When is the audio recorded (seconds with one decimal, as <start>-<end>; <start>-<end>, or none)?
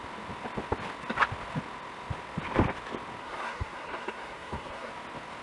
0.0-3.2; 4.9-5.4